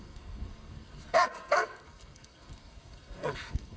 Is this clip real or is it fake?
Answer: fake